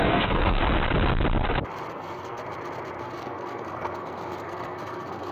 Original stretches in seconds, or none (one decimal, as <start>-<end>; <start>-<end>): 0.6-1.9; 2.4-3.0